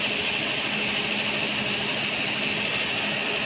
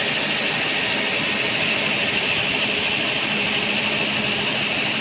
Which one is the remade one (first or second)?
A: second